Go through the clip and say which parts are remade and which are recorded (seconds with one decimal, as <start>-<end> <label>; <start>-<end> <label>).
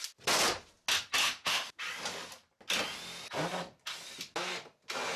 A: 0.0-1.2 recorded; 1.2-1.8 remade; 1.8-5.2 recorded